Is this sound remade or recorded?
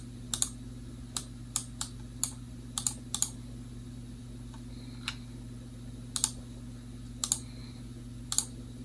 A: recorded